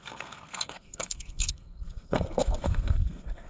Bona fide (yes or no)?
no